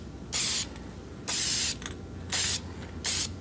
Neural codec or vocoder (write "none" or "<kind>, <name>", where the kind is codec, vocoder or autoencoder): none